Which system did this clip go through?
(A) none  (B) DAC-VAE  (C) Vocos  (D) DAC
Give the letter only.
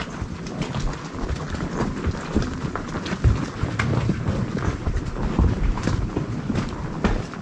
A